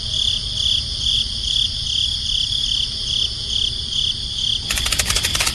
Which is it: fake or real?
fake